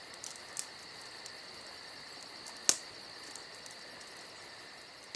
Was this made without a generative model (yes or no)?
yes